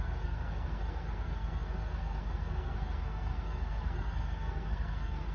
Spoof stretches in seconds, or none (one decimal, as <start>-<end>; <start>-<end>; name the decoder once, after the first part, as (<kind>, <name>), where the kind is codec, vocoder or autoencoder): 0.0-5.3 (codec, SNAC)